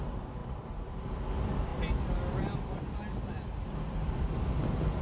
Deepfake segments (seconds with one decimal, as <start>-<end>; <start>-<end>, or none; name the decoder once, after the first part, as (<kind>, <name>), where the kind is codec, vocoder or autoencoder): none